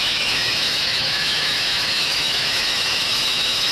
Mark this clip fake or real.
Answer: fake